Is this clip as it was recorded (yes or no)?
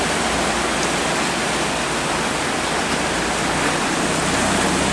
yes